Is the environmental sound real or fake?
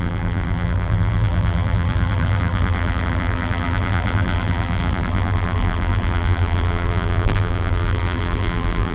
fake